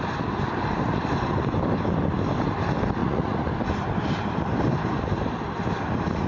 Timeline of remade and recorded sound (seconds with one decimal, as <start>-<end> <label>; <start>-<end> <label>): 0.0-3.0 recorded; 3.0-3.5 remade; 3.5-6.3 recorded